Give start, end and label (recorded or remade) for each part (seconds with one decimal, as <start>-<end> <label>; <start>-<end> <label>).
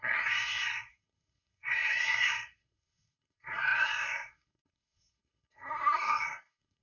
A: 0.0-6.8 remade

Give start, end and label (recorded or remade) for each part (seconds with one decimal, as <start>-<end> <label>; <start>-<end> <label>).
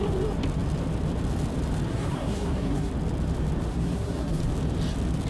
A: 0.0-1.9 recorded; 1.9-2.9 remade; 2.9-3.7 recorded; 3.7-4.4 remade; 4.4-5.3 recorded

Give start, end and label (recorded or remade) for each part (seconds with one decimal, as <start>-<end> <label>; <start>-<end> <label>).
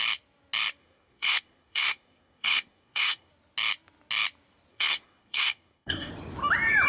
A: 0.0-0.8 recorded; 0.8-3.3 remade; 3.3-4.7 recorded; 4.7-6.1 remade; 6.1-6.9 recorded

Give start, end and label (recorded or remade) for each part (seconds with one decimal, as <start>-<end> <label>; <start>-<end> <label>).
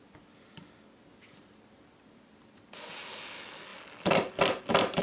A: 0.0-5.0 recorded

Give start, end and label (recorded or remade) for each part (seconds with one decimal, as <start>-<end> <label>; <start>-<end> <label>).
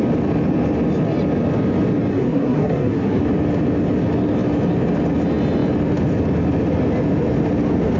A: 0.0-2.1 recorded; 2.1-3.2 remade; 3.2-8.0 recorded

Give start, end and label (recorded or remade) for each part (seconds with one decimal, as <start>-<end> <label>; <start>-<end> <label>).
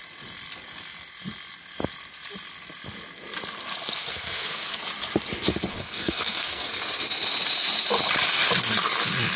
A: 0.0-4.0 recorded; 4.0-4.8 remade; 4.8-5.7 recorded; 5.7-6.7 remade; 6.7-9.4 recorded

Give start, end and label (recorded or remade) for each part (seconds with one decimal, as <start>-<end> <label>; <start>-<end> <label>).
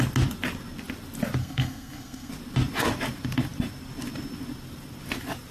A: 0.0-1.4 recorded; 1.4-2.3 remade; 2.3-5.5 recorded